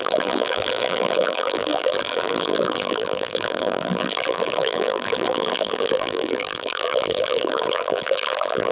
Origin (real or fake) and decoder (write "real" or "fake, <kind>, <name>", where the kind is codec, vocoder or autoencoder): fake, vocoder, BigVGAN v2